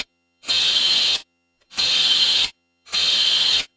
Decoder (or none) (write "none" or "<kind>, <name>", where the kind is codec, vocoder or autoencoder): vocoder, HiFi-GAN